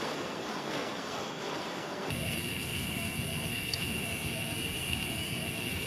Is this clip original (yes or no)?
no